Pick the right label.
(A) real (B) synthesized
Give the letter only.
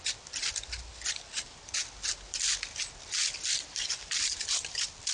A